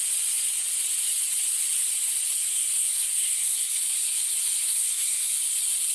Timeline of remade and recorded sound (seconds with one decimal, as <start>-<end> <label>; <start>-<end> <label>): 0.0-2.5 recorded; 2.5-3.7 remade; 3.7-4.6 recorded; 4.6-5.3 remade; 5.3-5.9 recorded